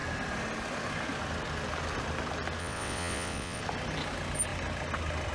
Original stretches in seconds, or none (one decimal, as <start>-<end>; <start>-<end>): 0.0-2.6; 3.6-5.3